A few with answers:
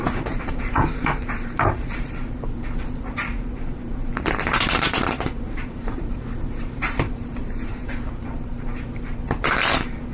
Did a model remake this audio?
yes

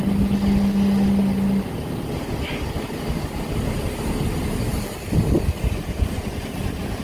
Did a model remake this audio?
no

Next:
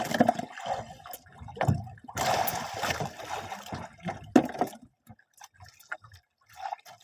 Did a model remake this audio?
no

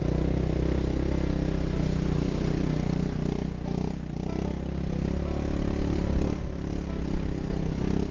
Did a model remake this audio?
no